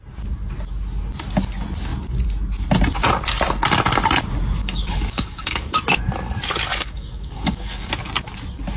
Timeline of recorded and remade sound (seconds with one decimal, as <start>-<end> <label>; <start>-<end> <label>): 0.0-4.6 recorded; 4.6-5.8 remade; 5.8-6.7 recorded; 6.7-7.9 remade; 7.9-8.8 recorded